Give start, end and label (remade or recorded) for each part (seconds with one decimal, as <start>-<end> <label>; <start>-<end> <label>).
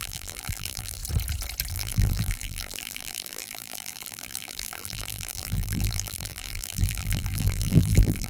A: 0.0-1.0 remade; 1.0-1.7 recorded; 1.7-8.3 remade